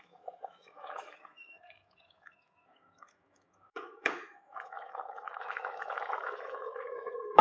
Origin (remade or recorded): remade